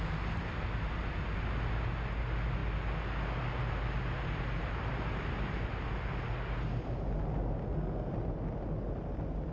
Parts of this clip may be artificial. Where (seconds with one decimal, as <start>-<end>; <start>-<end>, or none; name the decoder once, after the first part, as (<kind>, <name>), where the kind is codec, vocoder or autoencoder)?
7.6-8.1 (codec, SNAC)